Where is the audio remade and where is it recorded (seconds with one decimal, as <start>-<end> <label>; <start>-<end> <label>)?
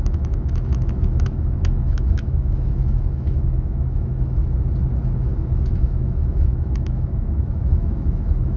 0.0-4.4 remade; 4.4-5.0 recorded; 5.0-8.6 remade